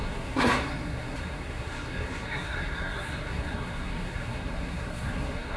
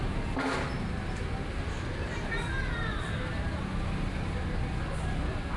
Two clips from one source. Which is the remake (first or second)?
first